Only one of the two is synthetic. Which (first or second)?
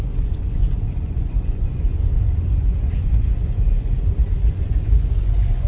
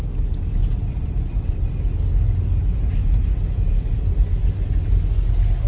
first